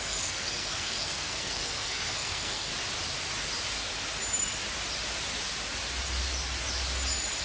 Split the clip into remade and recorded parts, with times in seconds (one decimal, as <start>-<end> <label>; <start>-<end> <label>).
0.0-2.7 remade; 2.7-7.4 recorded